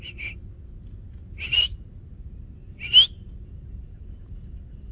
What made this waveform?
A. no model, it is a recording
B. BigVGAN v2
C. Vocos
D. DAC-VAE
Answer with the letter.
A